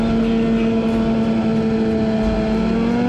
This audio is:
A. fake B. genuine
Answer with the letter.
B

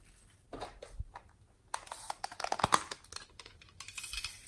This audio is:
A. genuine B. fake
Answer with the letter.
A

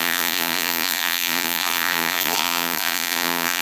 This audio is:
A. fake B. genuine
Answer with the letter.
A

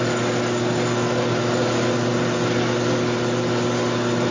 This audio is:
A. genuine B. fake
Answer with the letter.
A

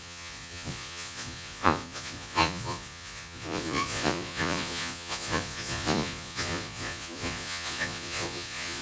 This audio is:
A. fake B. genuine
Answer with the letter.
A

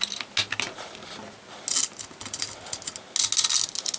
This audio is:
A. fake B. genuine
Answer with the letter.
B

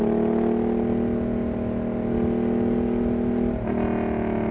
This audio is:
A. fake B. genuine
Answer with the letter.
B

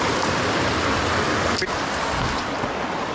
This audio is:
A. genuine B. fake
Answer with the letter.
A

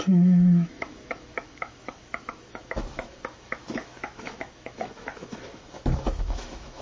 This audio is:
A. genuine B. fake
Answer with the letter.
B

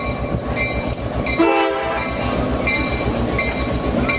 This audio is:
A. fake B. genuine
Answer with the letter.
B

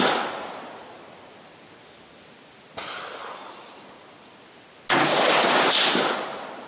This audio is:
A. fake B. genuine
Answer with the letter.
B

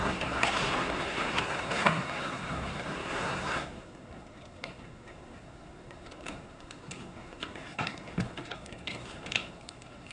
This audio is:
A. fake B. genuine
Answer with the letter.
A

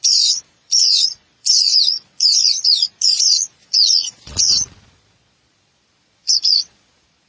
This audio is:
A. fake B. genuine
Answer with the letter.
A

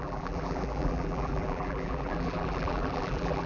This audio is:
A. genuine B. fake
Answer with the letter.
B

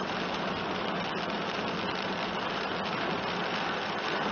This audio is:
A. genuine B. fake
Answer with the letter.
A